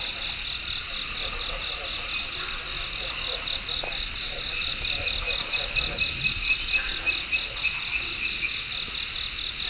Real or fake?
real